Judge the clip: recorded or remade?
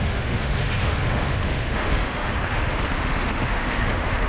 remade